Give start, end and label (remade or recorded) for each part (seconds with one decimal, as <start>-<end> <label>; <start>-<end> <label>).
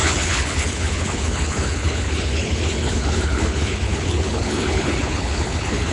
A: 0.0-5.9 remade